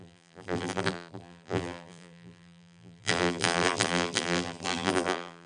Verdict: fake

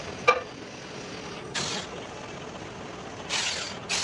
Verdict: real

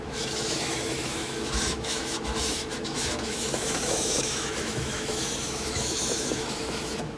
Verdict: fake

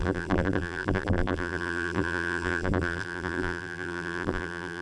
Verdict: fake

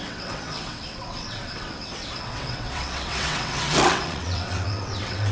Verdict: fake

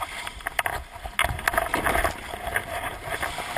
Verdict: real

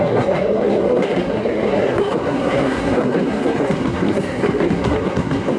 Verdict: fake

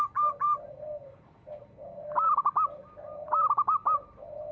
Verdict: real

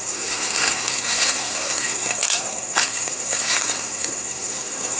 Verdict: fake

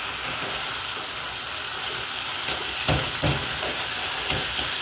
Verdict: real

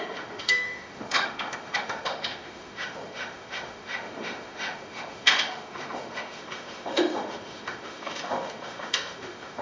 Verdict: fake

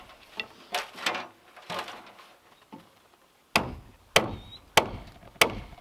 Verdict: real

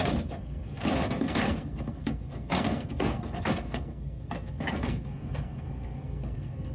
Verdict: fake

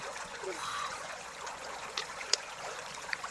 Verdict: fake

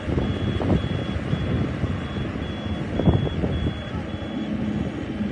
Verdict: real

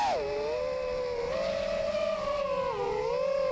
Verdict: real